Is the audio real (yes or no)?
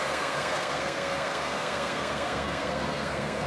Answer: no